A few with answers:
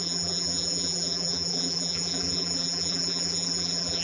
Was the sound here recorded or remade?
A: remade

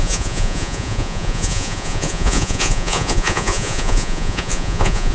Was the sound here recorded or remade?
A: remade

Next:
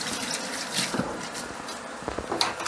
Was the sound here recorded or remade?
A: recorded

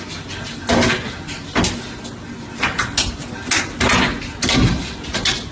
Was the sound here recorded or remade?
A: recorded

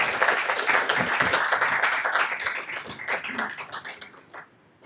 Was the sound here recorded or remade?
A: recorded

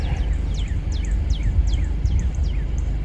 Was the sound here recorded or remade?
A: recorded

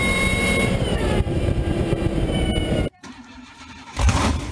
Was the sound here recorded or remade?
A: remade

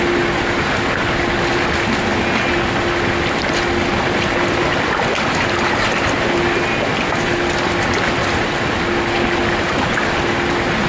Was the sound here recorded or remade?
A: recorded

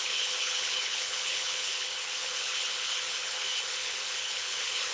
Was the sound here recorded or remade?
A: remade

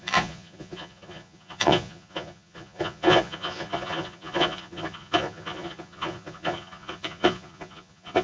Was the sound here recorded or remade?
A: remade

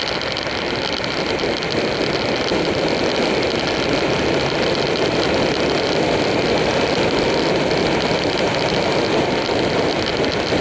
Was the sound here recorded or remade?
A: recorded